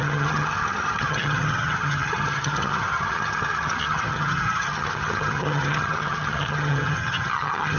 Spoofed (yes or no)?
yes